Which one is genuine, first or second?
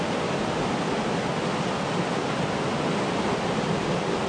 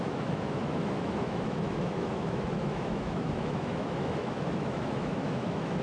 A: first